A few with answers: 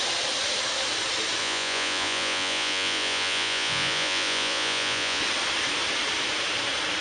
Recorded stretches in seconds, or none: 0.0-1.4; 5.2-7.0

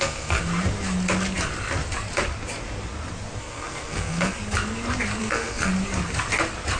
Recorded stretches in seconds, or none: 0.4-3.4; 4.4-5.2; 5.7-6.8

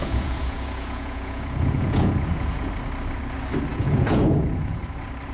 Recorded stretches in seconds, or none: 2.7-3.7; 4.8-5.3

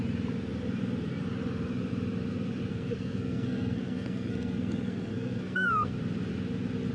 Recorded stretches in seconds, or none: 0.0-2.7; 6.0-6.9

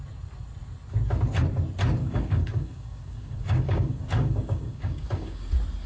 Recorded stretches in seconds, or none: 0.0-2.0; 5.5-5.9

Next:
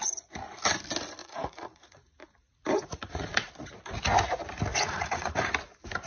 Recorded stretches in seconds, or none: 0.0-1.2; 3.5-4.7; 5.5-6.1

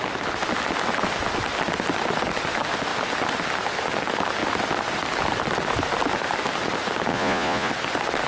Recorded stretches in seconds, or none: 0.0-7.1; 7.7-8.3

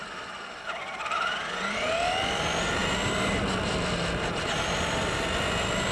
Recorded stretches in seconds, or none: 0.0-5.9